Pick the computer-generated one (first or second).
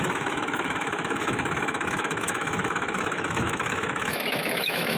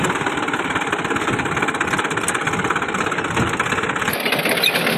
first